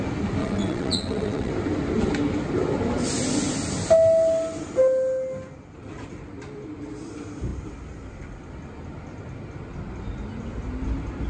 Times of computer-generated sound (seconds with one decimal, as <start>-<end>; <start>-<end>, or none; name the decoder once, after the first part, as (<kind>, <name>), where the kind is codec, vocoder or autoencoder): 0.4-1.5 (vocoder, WaveNeXt)